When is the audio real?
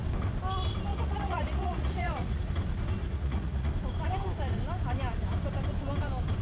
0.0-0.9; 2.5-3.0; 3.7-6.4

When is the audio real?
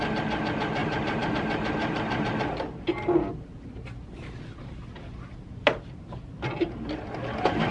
0.0-0.8; 1.3-1.8; 2.3-7.7